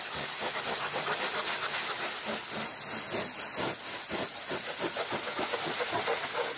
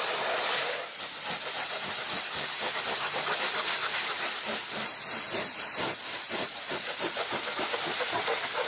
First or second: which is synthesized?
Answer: second